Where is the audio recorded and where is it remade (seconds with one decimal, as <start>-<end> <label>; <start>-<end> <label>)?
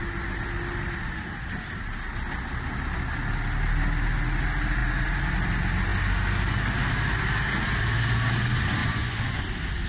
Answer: 0.0-8.8 recorded; 8.8-9.4 remade; 9.4-9.9 recorded